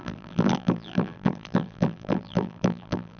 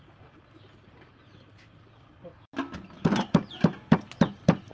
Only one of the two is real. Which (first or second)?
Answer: second